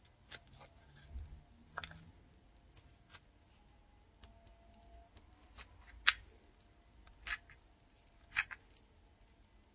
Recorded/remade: recorded